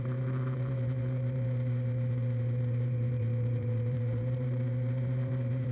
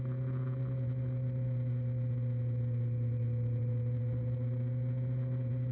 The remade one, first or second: first